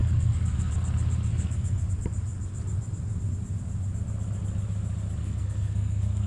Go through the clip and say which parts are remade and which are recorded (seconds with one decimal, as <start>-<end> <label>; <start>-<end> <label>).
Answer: 0.0-0.7 remade; 0.7-1.3 recorded; 1.3-1.9 remade; 1.9-5.2 recorded; 5.2-6.3 remade